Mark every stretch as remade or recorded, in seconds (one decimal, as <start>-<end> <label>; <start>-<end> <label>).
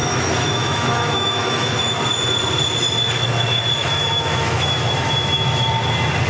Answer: 0.0-1.9 remade; 1.9-3.8 recorded; 3.8-5.7 remade; 5.7-6.3 recorded